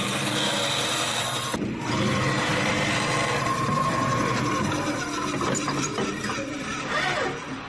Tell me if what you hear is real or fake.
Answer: real